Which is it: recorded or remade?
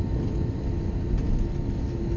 recorded